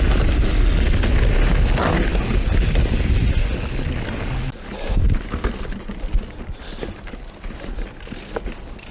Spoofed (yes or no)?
no